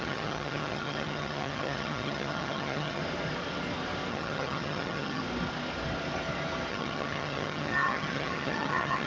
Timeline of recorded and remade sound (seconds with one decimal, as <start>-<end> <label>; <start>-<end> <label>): 0.0-3.0 remade; 3.0-4.1 recorded; 4.1-5.2 remade; 5.2-6.7 recorded; 6.7-9.1 remade